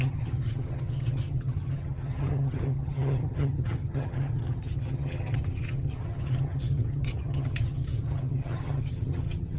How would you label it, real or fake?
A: fake